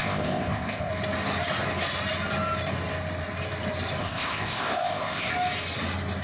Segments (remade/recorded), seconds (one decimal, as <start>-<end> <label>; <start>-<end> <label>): 0.0-0.9 remade; 0.9-4.0 recorded; 4.0-5.3 remade; 5.3-6.2 recorded